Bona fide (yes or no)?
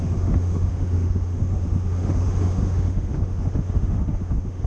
no